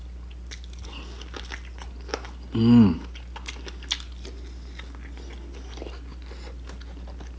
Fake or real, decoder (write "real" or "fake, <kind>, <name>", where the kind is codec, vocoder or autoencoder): real